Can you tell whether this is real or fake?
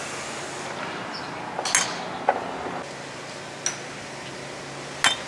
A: real